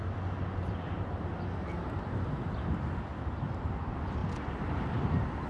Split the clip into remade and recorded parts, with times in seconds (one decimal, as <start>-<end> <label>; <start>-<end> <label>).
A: 0.0-5.5 recorded